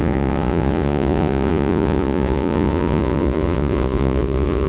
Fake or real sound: fake